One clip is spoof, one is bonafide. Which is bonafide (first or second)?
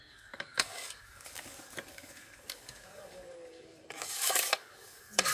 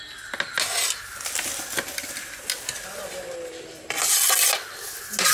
second